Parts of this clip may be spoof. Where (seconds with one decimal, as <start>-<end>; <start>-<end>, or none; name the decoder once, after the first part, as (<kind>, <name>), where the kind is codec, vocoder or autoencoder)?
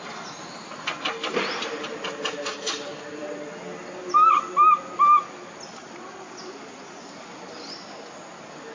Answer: none